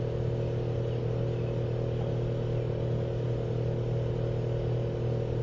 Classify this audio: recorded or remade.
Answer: recorded